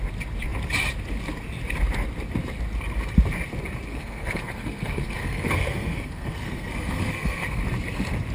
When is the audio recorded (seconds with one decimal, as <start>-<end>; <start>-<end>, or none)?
0.0-3.9; 7.6-8.3